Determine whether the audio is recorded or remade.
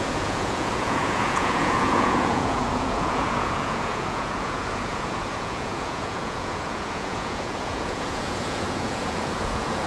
remade